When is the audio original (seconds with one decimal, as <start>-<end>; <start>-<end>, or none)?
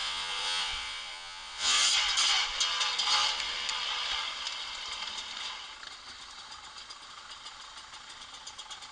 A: 1.8-8.9